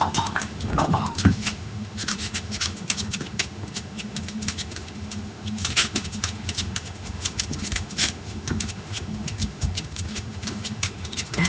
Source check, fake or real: fake